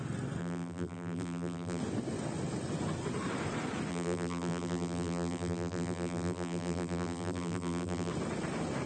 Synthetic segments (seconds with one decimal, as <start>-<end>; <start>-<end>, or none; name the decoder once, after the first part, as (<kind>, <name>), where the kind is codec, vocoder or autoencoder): 0.4-1.8 (vocoder, BigVGAN v2); 3.9-8.1